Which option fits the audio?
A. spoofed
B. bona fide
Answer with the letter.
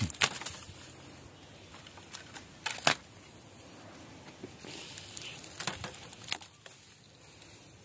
B